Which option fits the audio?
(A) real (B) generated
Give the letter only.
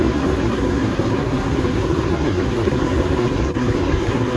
B